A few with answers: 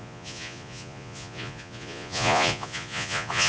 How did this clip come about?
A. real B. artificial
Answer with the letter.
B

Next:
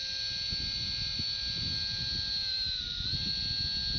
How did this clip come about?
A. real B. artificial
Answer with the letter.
A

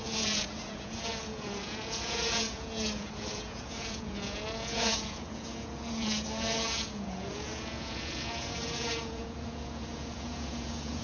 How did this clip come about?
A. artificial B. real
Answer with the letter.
A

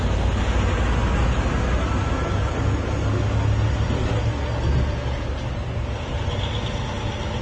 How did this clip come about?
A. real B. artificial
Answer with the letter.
A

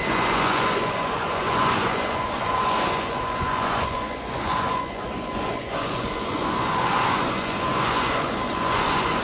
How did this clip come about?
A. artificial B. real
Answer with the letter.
A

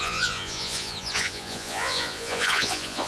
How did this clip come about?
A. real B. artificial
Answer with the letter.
B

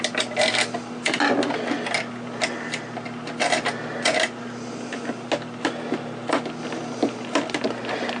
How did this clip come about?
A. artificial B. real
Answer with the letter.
B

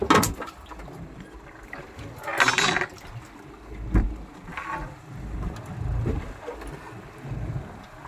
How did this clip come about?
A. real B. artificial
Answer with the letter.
A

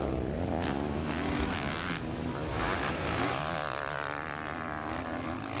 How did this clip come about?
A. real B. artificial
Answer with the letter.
A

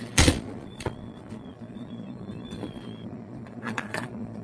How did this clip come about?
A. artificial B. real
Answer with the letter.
A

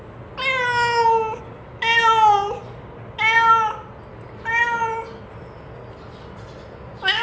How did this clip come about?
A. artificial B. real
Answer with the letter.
B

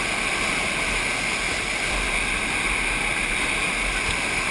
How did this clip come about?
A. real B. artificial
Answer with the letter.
A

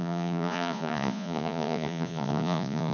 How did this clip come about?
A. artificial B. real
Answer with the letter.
A